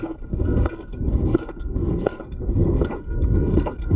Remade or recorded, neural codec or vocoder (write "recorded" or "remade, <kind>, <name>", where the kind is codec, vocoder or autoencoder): remade, codec, SNAC